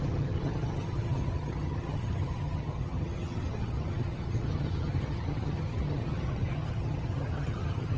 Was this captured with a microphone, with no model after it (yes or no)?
no